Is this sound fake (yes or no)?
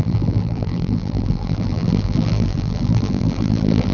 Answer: yes